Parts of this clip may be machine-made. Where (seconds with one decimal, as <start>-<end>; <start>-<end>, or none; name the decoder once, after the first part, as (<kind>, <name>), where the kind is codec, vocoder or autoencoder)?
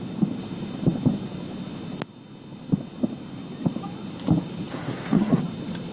4.7-5.4 (codec, SNAC)